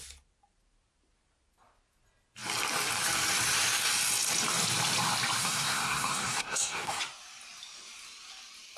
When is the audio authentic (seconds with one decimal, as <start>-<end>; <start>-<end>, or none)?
0.0-5.4; 7.0-8.8